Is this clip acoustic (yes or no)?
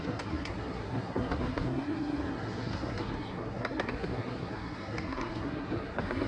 no